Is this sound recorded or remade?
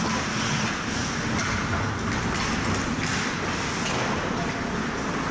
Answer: recorded